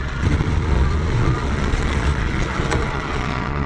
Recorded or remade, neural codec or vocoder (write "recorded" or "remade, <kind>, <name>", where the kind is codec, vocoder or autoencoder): remade, vocoder, Vocos